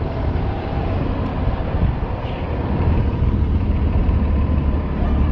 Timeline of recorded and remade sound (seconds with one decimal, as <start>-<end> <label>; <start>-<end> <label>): 0.0-1.3 remade; 1.3-2.0 recorded; 2.0-5.3 remade